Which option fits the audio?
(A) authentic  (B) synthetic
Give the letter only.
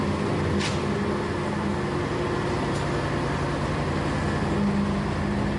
A